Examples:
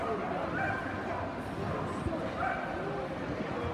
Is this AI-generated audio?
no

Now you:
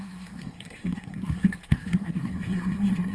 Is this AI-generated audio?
yes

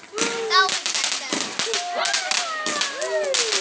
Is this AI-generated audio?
no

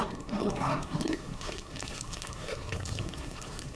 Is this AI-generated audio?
yes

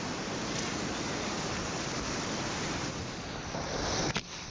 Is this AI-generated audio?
no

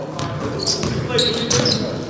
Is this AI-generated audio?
no